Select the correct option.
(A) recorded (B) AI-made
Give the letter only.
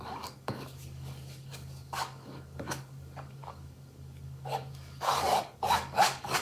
B